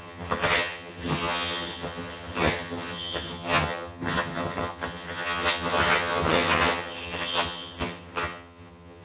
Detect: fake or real fake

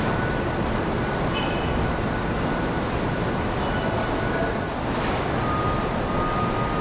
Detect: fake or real real